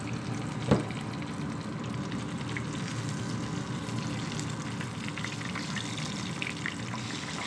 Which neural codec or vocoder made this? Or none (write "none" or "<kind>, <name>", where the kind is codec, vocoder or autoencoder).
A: none